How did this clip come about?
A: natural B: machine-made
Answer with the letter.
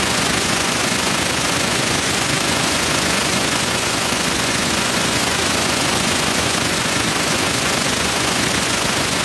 B